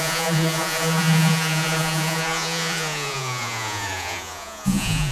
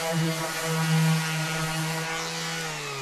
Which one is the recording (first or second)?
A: second